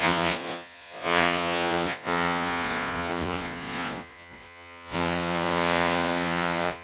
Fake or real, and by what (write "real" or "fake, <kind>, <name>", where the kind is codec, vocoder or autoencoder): fake, vocoder, Vocos